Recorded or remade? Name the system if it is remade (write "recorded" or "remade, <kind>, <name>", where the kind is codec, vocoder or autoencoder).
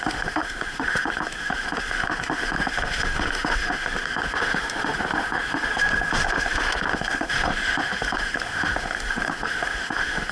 remade, autoencoder, DAC-VAE